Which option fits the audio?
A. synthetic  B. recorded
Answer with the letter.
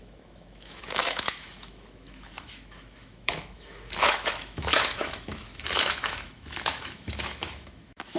A